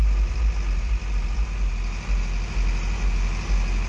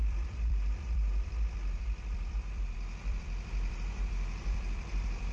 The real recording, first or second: first